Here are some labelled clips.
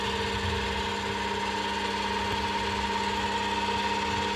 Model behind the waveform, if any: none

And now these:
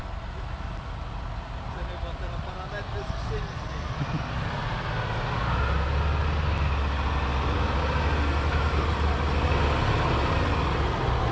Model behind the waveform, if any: none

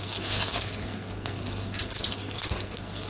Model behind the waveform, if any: codec, SNAC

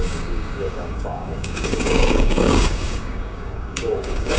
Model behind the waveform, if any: codec, DAC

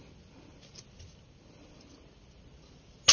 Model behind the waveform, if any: none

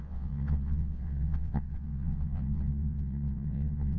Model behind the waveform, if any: vocoder, WaveNeXt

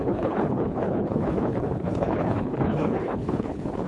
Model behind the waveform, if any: codec, HILCodec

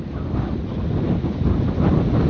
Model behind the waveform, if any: none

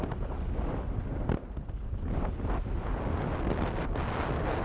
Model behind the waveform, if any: none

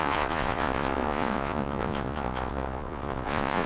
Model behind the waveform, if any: vocoder, Vocos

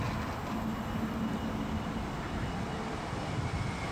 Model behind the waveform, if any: none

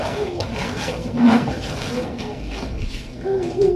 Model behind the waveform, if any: codec, SNAC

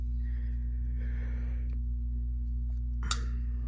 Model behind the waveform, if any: none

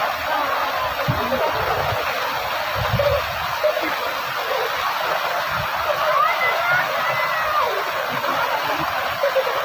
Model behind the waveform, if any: none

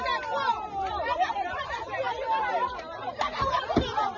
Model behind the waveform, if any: none